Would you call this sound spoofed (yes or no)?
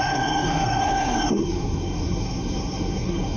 yes